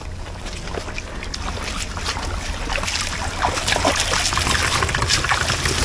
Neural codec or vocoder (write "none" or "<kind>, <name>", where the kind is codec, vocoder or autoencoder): none